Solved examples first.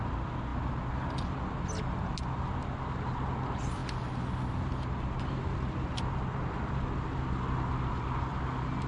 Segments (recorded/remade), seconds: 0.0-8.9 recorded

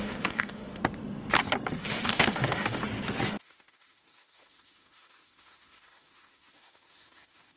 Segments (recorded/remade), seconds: 0.0-0.8 remade; 0.8-1.8 recorded; 1.8-2.8 remade; 2.8-3.3 recorded; 3.3-7.6 remade

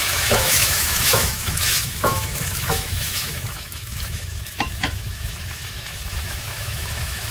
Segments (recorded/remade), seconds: 0.0-7.3 remade

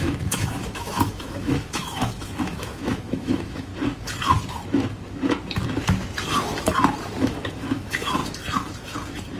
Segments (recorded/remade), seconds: 0.0-3.7 remade; 3.7-7.2 recorded; 7.2-8.2 remade; 8.2-9.4 recorded

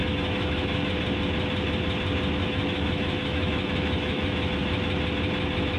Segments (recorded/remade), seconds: 0.0-0.9 remade; 0.9-2.4 recorded; 2.4-4.6 remade; 4.6-5.8 recorded

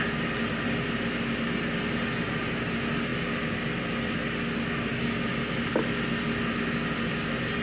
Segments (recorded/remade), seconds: 0.0-7.6 recorded